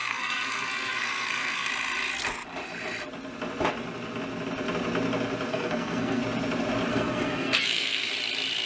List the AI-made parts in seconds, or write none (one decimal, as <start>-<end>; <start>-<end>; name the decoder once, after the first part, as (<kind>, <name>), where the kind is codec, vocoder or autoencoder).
0.0-1.7 (codec, SNAC); 5.5-6.2; 6.9-8.1